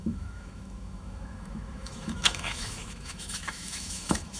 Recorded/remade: remade